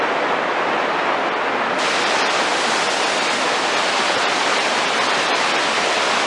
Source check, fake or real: real